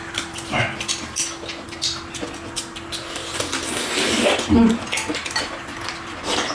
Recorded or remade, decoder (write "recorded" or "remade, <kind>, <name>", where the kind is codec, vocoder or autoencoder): recorded